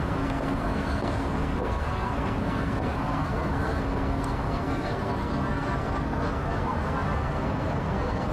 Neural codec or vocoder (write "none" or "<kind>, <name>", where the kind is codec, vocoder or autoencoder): codec, SNAC